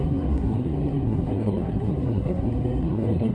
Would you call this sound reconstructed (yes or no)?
yes